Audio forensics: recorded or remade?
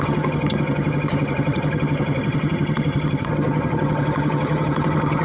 remade